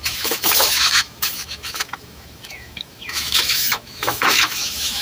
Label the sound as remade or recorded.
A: remade